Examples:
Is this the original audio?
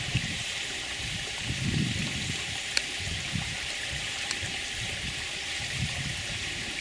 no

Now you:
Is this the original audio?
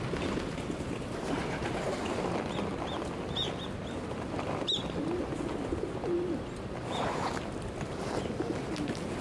yes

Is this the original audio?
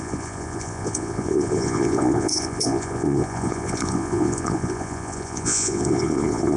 no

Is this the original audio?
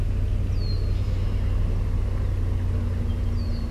yes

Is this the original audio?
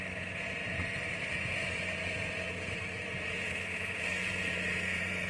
no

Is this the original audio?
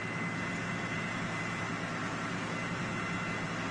yes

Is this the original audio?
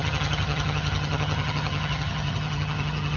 no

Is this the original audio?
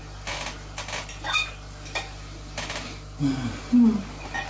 yes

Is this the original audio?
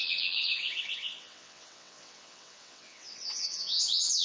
no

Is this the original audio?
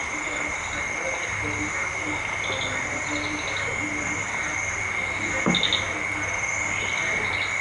yes